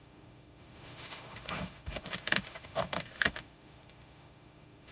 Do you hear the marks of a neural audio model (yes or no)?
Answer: yes